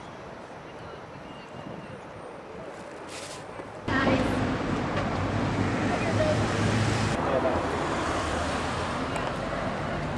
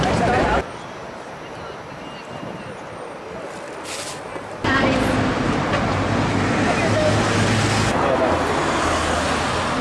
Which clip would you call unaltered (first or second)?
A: second